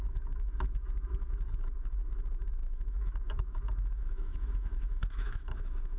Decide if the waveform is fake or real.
fake